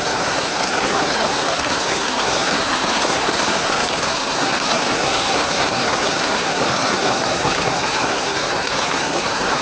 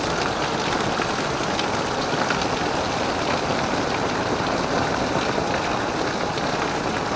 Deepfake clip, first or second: first